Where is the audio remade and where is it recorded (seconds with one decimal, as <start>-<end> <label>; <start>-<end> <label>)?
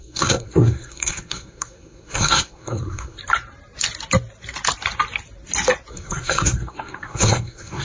0.0-3.2 remade; 3.2-5.9 recorded; 5.9-7.8 remade